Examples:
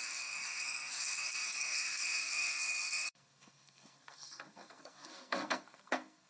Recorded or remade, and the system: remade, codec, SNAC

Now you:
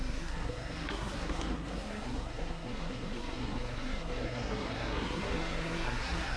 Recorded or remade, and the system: remade, codec, SNAC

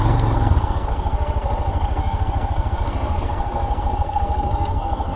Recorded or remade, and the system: remade, codec, SNAC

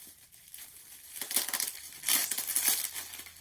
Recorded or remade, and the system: recorded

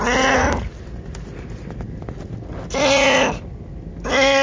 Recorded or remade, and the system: recorded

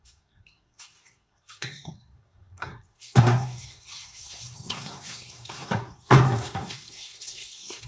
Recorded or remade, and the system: remade, codec, SNAC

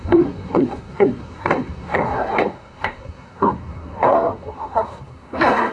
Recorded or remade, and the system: remade, codec, SNAC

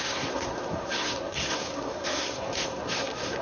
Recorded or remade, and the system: remade, codec, SNAC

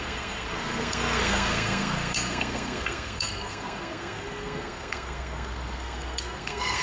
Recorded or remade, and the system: remade, codec, SNAC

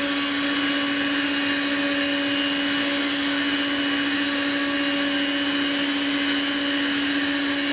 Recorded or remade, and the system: recorded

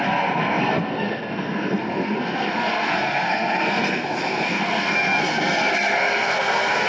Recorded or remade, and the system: remade, codec, SNAC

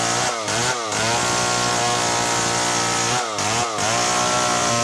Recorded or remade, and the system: recorded